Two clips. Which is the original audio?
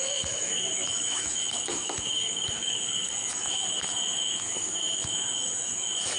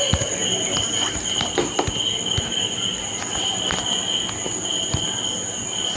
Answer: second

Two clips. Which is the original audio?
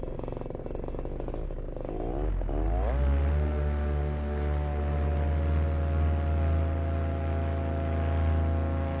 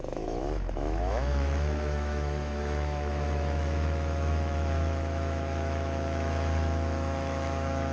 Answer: first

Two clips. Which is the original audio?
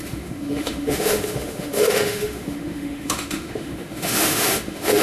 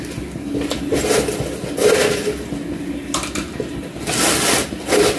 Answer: second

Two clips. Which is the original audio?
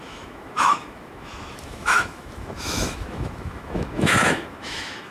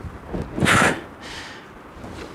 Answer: second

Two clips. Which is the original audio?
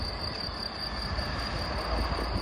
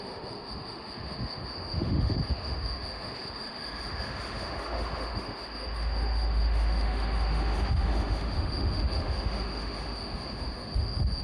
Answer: first